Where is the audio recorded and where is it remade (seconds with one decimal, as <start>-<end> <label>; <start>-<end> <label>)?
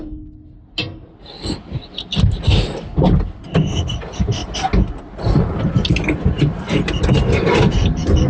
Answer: 0.0-8.3 recorded